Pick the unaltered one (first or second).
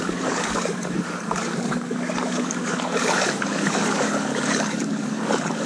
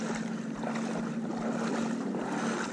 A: second